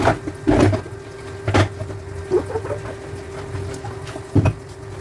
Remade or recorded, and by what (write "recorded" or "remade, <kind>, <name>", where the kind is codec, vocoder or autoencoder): recorded